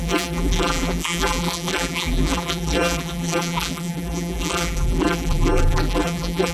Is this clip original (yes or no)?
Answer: no